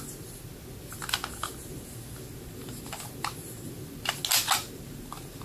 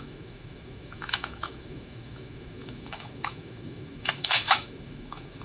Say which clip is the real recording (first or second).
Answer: first